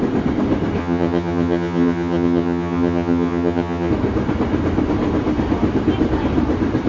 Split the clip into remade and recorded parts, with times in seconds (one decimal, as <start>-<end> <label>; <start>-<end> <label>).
0.0-0.8 recorded; 0.8-3.9 remade; 3.9-6.9 recorded